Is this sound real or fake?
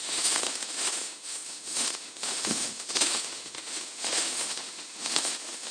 fake